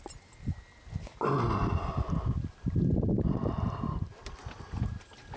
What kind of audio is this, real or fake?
real